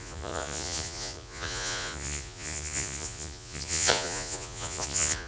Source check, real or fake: fake